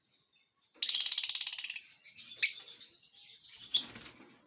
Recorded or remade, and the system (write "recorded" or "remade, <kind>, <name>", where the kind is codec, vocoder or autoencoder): recorded